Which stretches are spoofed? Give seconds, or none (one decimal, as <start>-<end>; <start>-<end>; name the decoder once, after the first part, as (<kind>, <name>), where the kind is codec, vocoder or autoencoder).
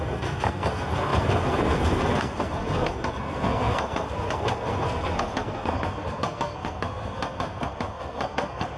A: 0.0-8.8 (codec, SNAC)